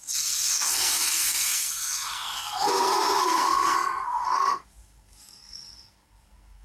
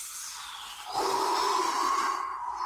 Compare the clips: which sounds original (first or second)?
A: second